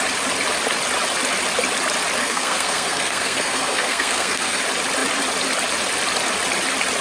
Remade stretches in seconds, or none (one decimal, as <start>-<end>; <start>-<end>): 2.2-4.6